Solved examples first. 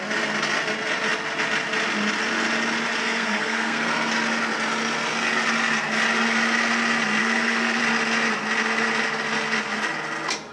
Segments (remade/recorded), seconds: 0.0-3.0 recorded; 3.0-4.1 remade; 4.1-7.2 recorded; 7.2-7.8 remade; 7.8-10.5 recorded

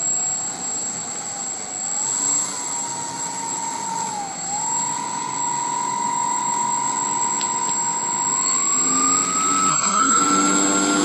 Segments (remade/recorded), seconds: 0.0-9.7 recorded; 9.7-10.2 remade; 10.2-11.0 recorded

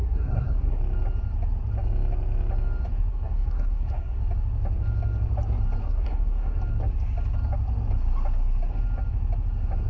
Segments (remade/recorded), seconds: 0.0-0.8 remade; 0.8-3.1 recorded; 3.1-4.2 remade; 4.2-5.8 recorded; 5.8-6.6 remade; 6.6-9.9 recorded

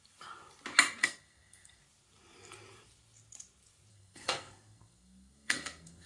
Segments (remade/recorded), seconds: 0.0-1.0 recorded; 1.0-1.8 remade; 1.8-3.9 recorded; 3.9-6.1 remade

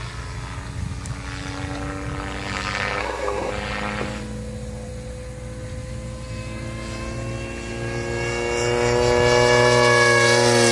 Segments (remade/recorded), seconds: 0.0-3.0 recorded; 3.0-3.5 remade; 3.5-10.7 recorded

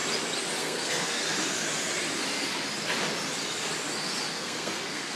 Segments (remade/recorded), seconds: 0.0-0.6 recorded; 0.6-1.2 remade; 1.2-4.3 recorded; 4.3-5.2 remade